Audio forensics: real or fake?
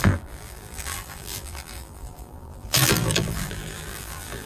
fake